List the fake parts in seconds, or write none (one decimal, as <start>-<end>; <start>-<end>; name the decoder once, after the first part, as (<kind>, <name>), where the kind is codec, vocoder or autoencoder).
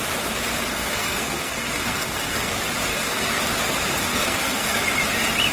0.7-2.5 (codec, SNAC); 2.9-3.4; 4.1-4.8